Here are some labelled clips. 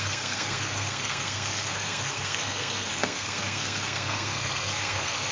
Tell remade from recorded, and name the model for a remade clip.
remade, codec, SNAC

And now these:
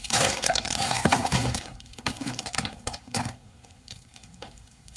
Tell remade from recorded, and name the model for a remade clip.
remade, codec, SNAC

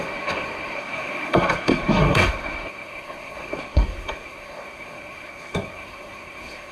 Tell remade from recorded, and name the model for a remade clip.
remade, codec, SNAC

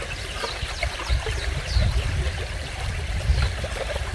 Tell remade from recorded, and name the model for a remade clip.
recorded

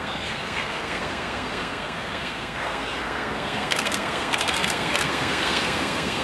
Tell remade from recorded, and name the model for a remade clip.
remade, codec, SNAC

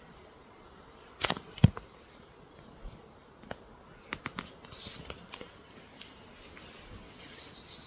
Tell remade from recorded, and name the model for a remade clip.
recorded